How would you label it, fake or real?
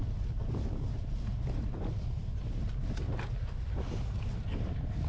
real